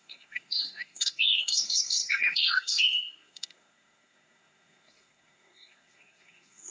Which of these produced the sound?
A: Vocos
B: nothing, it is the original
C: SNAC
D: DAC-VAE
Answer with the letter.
C